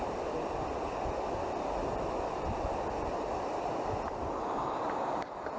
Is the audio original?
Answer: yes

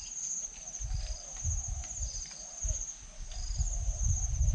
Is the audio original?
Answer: yes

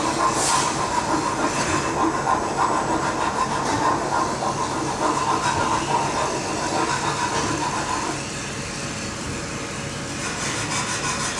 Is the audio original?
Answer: yes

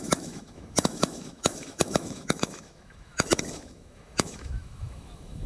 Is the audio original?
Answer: no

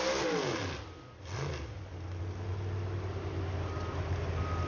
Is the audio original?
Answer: yes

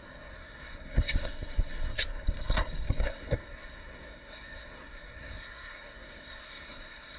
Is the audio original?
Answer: no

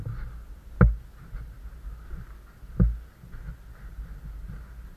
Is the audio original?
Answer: yes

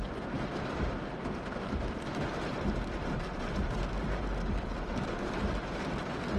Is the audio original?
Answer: yes